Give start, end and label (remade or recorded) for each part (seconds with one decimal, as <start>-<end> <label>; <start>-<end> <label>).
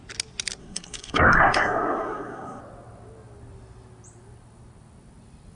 0.0-0.6 recorded; 0.6-2.6 remade; 2.6-5.6 recorded